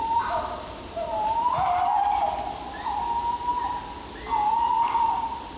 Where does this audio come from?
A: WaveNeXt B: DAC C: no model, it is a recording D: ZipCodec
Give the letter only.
C